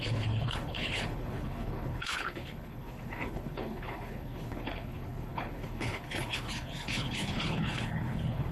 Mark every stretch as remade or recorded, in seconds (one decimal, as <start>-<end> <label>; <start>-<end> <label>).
0.0-8.5 remade